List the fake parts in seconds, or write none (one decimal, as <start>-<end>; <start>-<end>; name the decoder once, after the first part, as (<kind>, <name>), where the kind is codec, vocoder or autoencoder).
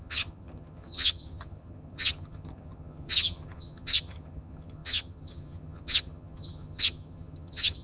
0.0-7.8 (vocoder, HiFi-GAN)